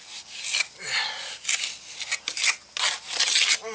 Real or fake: real